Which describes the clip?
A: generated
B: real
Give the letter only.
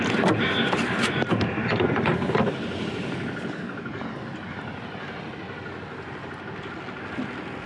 B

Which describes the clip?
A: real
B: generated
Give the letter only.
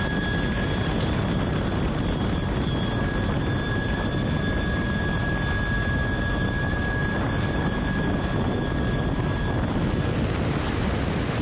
A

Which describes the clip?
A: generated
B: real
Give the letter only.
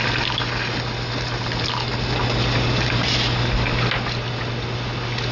B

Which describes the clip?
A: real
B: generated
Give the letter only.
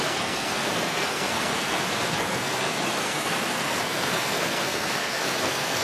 B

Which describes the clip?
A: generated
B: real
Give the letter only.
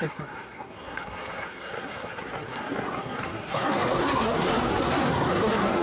A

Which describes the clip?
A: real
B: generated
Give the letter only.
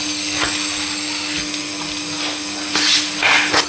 A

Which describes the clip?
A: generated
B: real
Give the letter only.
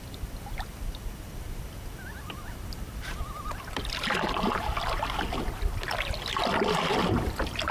B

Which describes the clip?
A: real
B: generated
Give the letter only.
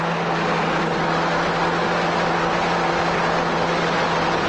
A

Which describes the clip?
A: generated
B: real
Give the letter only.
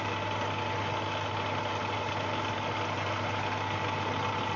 B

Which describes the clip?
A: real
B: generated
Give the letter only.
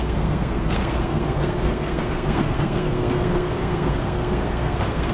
B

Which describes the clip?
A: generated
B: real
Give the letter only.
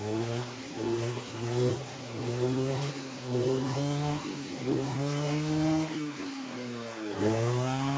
A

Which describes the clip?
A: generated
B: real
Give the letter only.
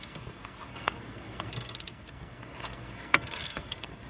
A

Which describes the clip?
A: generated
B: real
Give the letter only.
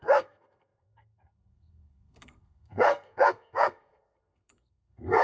A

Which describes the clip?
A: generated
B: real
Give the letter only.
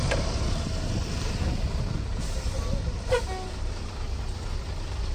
B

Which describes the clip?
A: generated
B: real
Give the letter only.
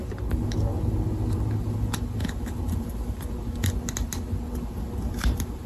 B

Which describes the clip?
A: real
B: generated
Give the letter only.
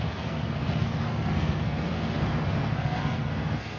B